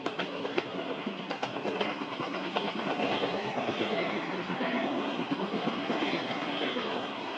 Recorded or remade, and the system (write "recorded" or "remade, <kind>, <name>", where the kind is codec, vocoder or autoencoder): remade, codec, SNAC